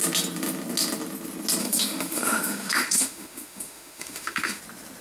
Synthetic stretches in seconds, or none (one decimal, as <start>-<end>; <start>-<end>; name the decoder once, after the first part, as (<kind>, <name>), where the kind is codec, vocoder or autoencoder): 1.6-4.6 (autoencoder, DAC-VAE)